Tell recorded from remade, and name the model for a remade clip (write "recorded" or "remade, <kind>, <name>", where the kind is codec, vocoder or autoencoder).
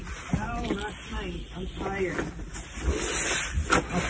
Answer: recorded